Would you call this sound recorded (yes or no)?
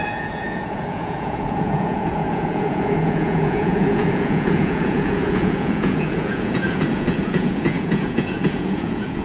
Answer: no